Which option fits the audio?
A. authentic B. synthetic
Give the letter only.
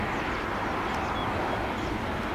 A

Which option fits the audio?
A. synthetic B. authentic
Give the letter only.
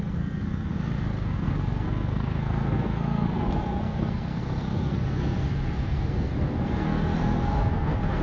A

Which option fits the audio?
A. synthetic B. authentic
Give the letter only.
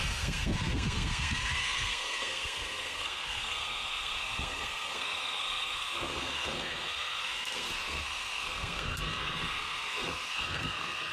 A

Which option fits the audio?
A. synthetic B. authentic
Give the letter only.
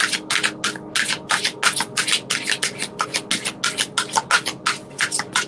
B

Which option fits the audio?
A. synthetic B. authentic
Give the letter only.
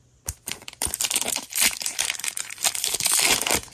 A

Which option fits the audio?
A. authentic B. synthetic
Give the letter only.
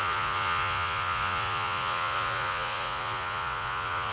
B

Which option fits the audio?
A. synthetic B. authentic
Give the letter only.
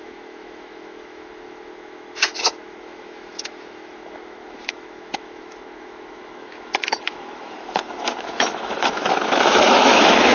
A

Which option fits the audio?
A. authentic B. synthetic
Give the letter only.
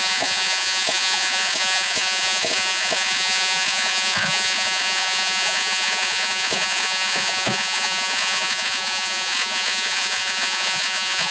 B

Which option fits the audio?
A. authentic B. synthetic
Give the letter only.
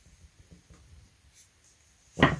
A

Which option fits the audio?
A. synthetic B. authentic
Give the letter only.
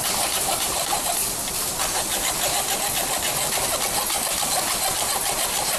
B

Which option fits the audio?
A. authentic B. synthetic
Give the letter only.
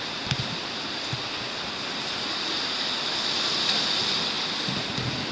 A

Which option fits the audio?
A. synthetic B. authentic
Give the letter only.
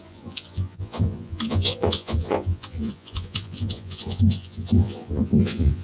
A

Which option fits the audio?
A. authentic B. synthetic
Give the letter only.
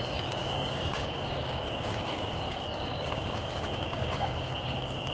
B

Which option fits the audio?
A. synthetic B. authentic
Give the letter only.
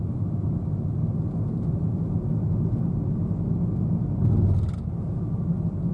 B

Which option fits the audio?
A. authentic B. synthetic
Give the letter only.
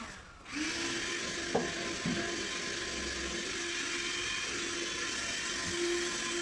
A